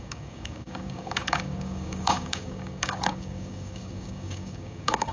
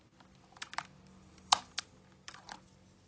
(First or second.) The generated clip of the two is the first